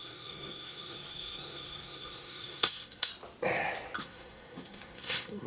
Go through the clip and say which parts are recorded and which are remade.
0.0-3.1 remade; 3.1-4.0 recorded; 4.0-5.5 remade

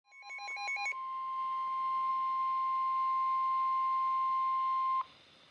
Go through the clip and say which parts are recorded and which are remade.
0.0-5.5 recorded

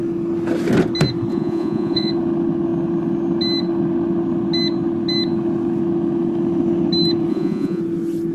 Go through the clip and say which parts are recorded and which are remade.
0.0-1.3 recorded; 1.3-2.1 remade; 2.1-7.3 recorded; 7.3-7.8 remade; 7.8-8.3 recorded

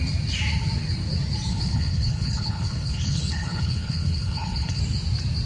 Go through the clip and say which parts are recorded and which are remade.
0.0-1.5 recorded; 1.5-4.8 remade; 4.8-5.5 recorded

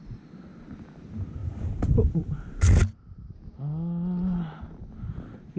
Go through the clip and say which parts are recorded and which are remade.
0.0-1.4 recorded; 1.4-2.2 remade; 2.2-5.6 recorded

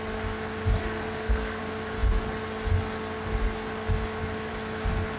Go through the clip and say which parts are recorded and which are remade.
0.0-0.8 recorded; 0.8-1.6 remade; 1.6-5.2 recorded